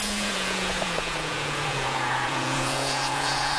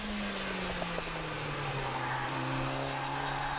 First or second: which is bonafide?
second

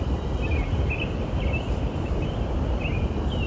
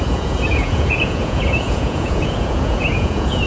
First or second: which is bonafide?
first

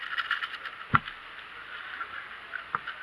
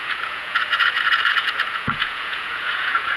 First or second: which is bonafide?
first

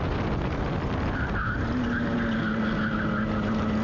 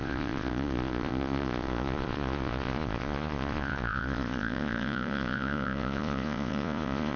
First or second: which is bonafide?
first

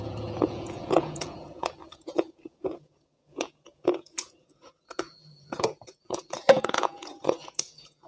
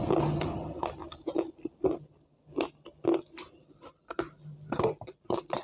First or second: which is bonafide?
second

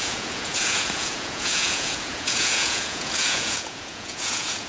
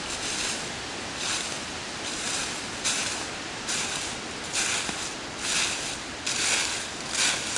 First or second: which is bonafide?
second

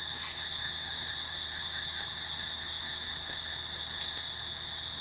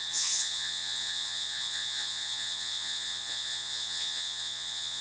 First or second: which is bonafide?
first